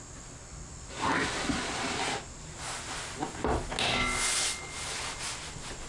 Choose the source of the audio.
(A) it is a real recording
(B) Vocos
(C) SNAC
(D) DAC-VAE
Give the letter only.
A